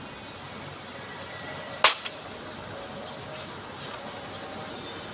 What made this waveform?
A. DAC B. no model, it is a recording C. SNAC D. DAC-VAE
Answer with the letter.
B